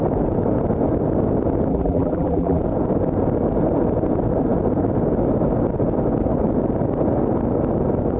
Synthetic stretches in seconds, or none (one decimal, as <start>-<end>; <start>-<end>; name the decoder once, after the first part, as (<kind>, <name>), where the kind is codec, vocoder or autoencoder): 1.7-2.6 (vocoder, BigVGAN v2)